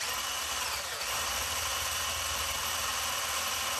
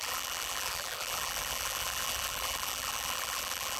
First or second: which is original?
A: first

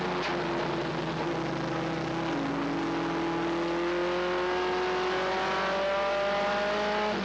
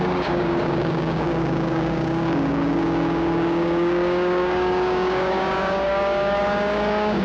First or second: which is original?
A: first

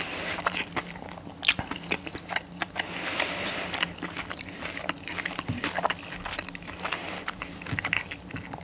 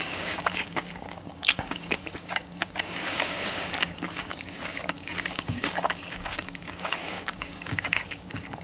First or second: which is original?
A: first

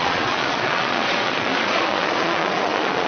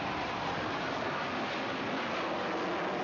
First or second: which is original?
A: second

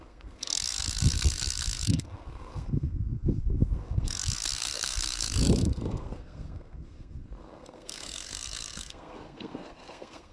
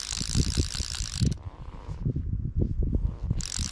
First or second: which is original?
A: second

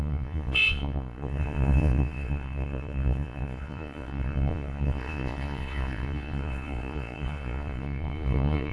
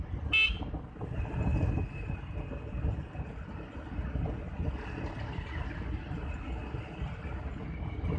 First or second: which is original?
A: second